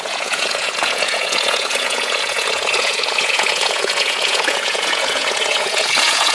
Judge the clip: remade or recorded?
remade